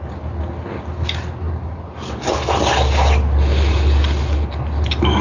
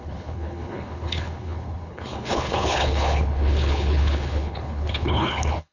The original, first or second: first